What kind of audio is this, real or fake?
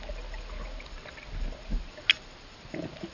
real